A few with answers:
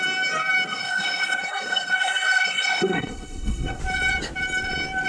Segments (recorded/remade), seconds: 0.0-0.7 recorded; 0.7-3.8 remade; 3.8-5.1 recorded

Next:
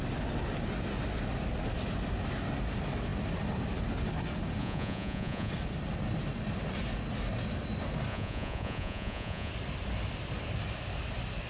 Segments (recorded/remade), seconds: 0.0-4.6 recorded; 4.6-5.5 remade; 5.5-8.1 recorded; 8.1-9.5 remade; 9.5-11.5 recorded

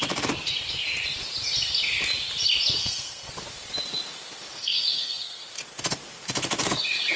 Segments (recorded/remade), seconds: 0.0-2.8 recorded; 2.8-3.3 remade; 3.3-4.6 recorded; 4.6-5.4 remade; 5.4-7.2 recorded

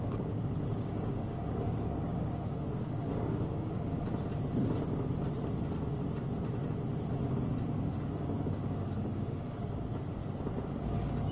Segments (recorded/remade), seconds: 0.0-3.9 remade; 3.9-7.9 recorded; 7.9-10.2 remade; 10.2-10.8 recorded; 10.8-11.3 remade

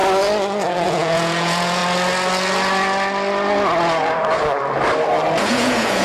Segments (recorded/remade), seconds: 0.0-0.7 recorded; 0.7-1.8 remade; 1.8-5.4 recorded; 5.4-6.0 remade

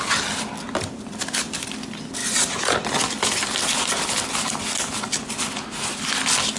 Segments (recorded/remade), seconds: 0.0-6.6 recorded